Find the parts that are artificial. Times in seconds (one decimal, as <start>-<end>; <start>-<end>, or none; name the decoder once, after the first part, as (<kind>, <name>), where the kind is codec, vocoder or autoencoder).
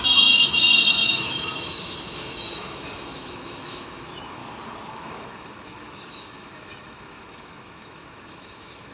0.0-4.4 (autoencoder, DAC-VAE); 4.9-8.9